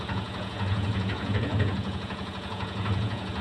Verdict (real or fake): fake